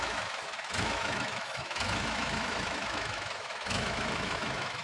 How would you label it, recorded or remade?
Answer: remade